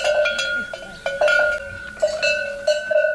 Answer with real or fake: real